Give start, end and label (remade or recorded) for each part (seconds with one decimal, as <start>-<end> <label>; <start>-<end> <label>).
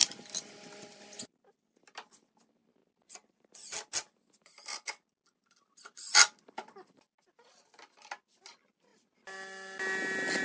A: 0.0-10.4 recorded